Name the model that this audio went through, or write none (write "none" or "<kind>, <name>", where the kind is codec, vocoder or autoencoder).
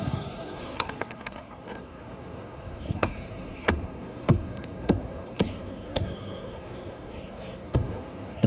codec, SNAC